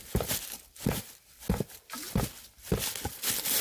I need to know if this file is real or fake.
real